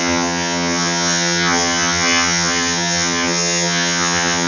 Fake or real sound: fake